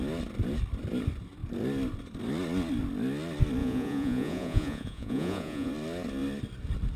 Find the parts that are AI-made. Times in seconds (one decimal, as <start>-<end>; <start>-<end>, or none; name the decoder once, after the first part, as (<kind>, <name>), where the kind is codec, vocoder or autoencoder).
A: 3.6-5.7 (vocoder, Vocos)

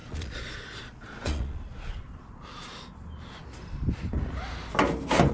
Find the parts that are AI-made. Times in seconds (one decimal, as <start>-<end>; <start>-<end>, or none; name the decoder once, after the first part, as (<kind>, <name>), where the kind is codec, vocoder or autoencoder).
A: 0.0-2.7 (vocoder, Vocos)

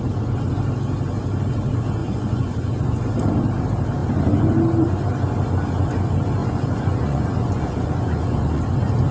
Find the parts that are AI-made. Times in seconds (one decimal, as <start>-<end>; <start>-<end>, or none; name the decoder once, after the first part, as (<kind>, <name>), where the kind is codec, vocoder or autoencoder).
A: 2.0-3.0 (vocoder, Vocos); 6.4-8.6

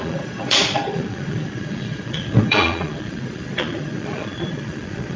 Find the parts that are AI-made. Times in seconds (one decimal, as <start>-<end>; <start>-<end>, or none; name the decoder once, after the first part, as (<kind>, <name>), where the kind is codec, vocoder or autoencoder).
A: 0.0-5.2 (vocoder, Vocos)

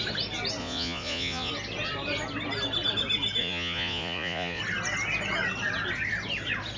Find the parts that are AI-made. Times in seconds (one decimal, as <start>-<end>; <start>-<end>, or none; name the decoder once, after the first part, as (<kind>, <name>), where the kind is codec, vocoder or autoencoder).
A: 0.6-1.5 (vocoder, Vocos); 3.4-4.6

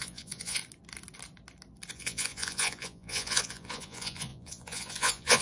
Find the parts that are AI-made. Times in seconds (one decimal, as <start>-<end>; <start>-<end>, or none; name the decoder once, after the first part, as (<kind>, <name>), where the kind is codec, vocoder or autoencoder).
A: 0.0-0.6 (vocoder, Vocos); 1.9-5.4